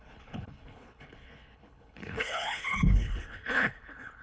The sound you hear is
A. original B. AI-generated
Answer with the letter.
B